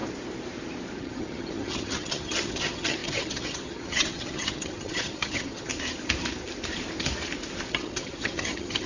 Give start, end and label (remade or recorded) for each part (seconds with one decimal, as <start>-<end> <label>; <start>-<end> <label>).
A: 0.0-1.0 recorded; 1.0-5.7 remade; 5.7-7.7 recorded; 7.7-8.9 remade